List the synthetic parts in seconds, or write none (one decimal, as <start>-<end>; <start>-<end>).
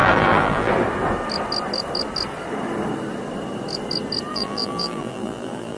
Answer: 0.0-0.7; 4.3-5.8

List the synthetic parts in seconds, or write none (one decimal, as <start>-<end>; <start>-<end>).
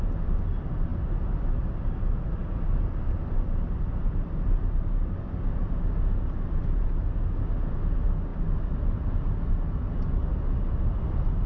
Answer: none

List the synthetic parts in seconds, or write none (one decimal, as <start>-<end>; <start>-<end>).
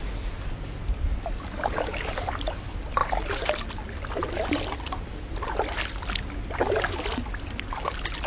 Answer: none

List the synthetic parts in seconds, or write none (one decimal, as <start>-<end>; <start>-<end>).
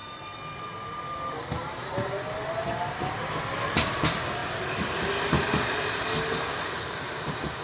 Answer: none